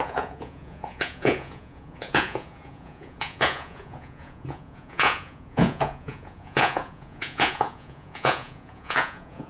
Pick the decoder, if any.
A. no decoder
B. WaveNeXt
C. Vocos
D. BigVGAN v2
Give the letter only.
C